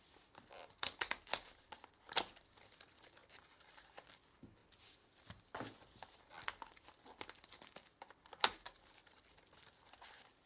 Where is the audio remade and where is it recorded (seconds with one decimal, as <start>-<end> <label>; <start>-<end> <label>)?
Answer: 0.0-10.5 recorded